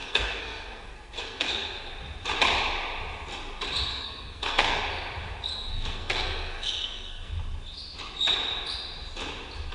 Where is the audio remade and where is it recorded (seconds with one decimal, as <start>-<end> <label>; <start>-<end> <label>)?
0.0-1.9 remade; 1.9-3.9 recorded; 3.9-4.8 remade; 4.8-5.5 recorded; 5.5-7.3 remade; 7.3-9.7 recorded